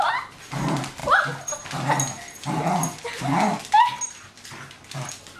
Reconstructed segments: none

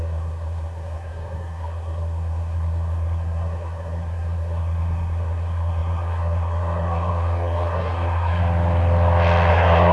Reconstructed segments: 0.0-8.4 (codec, SNAC); 9.5-9.9